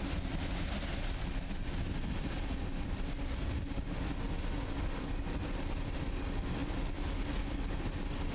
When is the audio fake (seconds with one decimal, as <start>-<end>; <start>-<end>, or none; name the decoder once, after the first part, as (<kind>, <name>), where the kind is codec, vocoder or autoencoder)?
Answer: none